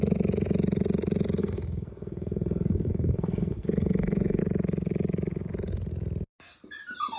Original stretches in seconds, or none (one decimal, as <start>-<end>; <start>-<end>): 0.0-1.4; 4.4-7.2